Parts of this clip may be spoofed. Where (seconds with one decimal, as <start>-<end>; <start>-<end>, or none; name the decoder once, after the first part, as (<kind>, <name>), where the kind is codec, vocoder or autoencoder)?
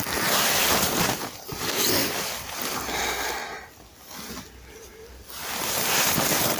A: none